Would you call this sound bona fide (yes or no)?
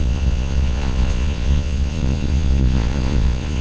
no